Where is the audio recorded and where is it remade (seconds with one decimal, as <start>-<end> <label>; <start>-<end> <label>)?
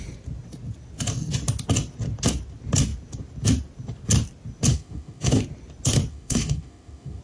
0.0-4.7 recorded; 4.7-5.4 remade; 5.4-6.1 recorded; 6.1-7.2 remade